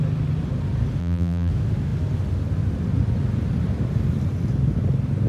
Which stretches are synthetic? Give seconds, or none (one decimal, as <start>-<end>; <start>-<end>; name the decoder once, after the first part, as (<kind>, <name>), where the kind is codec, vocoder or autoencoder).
1.0-1.5 (vocoder, BigVGAN v2)